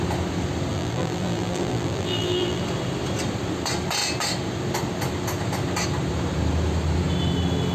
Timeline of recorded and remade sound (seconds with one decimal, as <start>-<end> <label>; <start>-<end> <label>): 0.0-0.7 recorded; 0.7-2.6 remade; 2.6-7.7 recorded